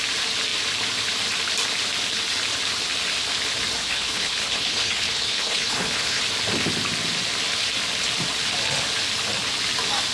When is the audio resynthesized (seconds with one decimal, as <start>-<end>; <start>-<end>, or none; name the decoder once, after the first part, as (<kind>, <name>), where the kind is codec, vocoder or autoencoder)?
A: 3.8-6.2 (codec, HILCodec)